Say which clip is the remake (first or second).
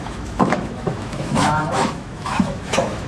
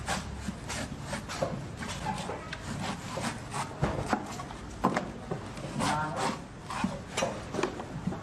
first